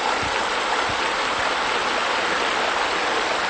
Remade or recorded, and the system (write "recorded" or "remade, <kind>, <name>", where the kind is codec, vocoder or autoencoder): recorded